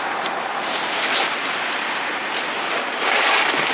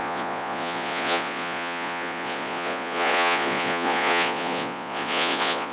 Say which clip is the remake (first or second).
second